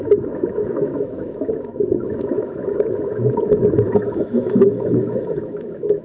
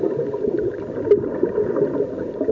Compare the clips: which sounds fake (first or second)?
first